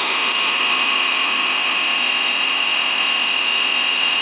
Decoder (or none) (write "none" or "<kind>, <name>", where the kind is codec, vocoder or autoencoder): autoencoder, DAC-VAE